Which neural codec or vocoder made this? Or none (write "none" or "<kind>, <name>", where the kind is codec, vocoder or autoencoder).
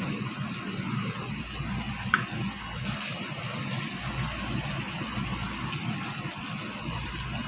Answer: none